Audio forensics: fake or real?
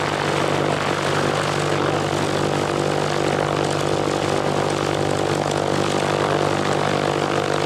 real